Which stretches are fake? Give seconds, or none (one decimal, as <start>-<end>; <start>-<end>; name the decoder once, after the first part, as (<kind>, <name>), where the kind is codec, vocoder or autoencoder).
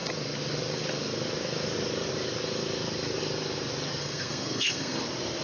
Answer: 4.0-5.0 (codec, SNAC)